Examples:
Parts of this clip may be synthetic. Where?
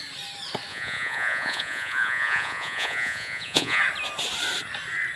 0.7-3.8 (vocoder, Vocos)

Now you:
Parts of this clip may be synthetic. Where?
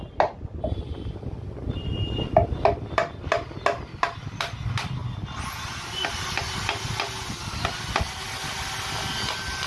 none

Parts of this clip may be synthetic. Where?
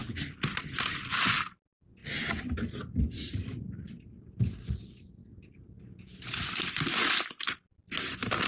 none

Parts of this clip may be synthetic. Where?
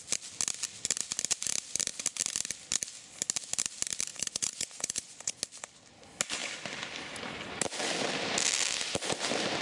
4.1-5.4 (vocoder, Vocos)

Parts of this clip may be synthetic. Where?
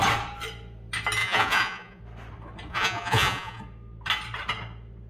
1.2-2.0 (vocoder, Vocos); 2.7-3.6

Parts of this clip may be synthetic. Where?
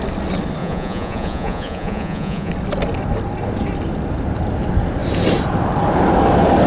0.6-2.5 (vocoder, Vocos)